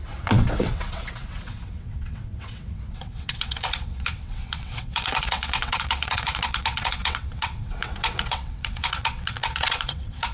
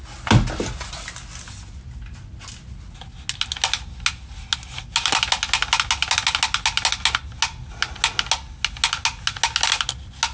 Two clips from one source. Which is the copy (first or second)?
first